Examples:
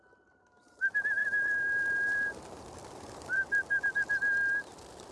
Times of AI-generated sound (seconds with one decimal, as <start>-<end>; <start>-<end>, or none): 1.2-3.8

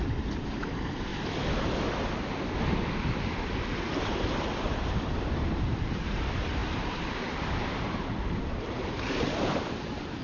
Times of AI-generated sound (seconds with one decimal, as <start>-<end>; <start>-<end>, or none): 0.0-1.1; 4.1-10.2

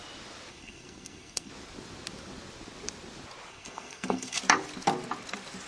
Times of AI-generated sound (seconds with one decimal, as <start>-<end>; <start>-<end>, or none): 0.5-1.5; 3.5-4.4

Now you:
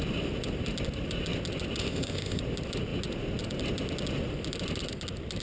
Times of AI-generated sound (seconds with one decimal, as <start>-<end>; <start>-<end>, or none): 1.8-2.4

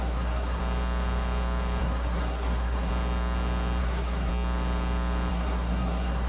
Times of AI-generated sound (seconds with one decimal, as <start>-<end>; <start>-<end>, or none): 0.0-0.6; 1.8-2.9; 3.8-4.3; 5.3-6.3

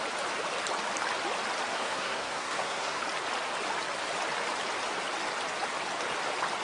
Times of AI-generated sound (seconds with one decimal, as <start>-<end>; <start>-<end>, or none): 1.7-3.0